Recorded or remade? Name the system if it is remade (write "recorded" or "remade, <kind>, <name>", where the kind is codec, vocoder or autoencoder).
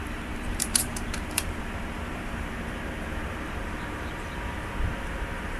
remade, vocoder, BigVGAN v2